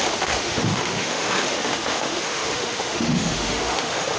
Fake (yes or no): yes